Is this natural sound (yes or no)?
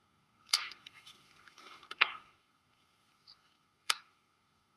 no